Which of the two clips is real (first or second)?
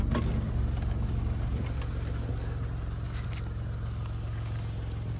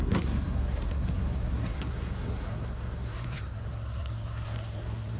first